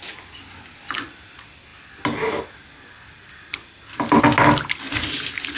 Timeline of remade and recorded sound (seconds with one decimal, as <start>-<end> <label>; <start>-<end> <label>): 0.0-5.6 recorded